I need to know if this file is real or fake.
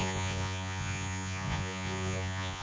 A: fake